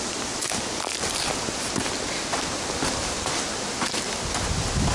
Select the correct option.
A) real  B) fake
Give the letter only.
A